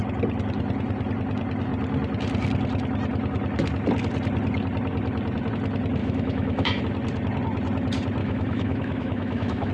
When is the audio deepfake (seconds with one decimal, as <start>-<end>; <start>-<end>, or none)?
6.0-6.8; 8.2-9.7